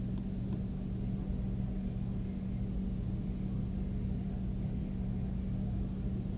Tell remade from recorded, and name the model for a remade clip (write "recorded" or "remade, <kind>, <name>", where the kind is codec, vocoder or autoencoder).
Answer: recorded